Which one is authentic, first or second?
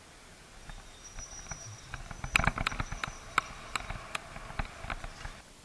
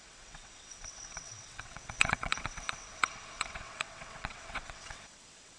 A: first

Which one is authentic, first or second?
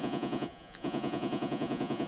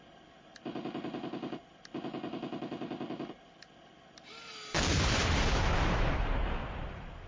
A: second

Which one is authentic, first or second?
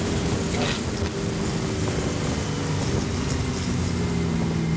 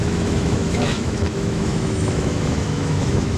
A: first